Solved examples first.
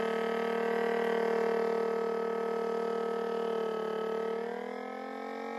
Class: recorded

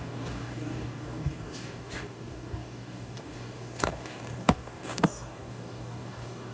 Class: remade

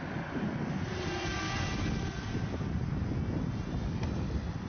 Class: recorded